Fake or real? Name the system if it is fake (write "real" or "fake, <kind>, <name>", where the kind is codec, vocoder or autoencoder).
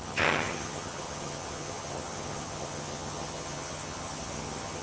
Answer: fake, vocoder, HiFi-GAN